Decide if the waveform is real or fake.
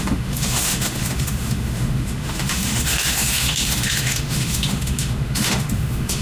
fake